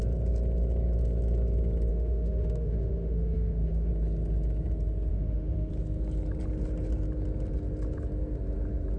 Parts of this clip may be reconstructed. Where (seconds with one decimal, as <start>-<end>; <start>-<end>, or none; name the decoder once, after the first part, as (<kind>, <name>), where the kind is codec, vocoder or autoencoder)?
1.9-3.9 (autoencoder, DAC-VAE); 5.1-5.7